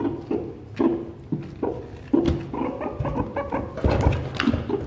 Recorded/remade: recorded